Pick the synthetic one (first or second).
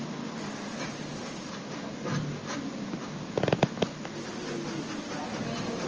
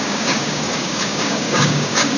second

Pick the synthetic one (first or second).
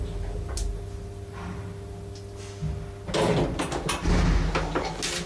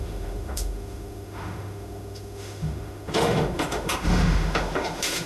second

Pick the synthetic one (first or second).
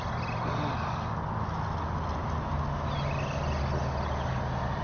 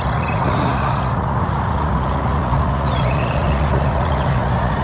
second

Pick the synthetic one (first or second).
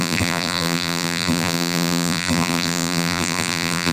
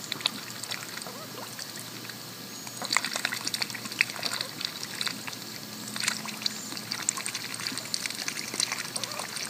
first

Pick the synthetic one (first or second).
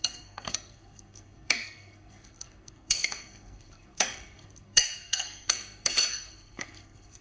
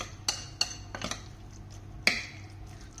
first